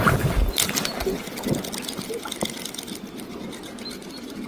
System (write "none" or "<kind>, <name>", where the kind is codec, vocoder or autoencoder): none